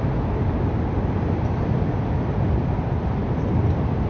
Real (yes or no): yes